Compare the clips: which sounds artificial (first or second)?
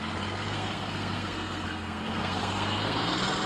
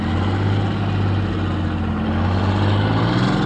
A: first